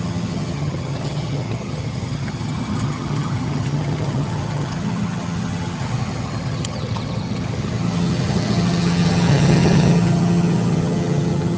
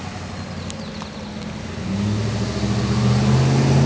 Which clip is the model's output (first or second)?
first